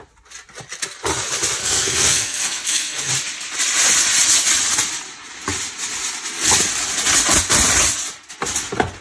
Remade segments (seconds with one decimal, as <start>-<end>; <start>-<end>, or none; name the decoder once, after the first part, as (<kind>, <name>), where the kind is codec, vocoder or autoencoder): 1.6-3.1 (codec, SNAC)